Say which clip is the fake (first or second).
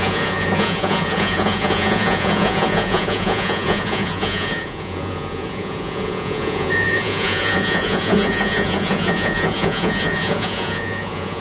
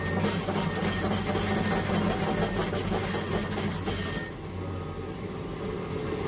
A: first